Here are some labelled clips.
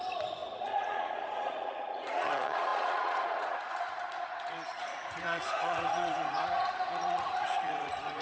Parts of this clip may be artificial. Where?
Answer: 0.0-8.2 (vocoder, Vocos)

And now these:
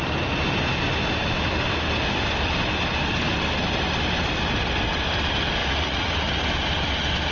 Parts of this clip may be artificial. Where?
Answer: 5.6-6.2 (vocoder, Vocos)